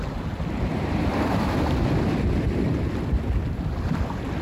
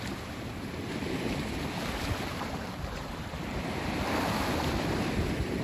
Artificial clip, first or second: second